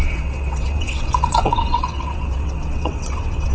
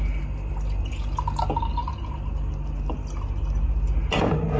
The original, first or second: second